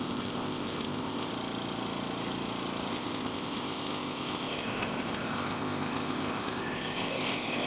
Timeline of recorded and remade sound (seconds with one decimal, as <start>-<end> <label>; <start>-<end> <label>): 0.0-1.3 remade; 1.3-2.9 recorded; 2.9-7.7 remade